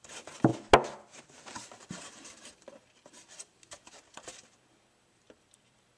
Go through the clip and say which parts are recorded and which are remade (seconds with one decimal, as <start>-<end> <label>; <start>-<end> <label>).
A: 0.0-0.5 remade; 0.5-1.8 recorded; 1.8-6.0 remade